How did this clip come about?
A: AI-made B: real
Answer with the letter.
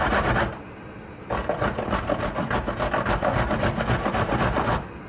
B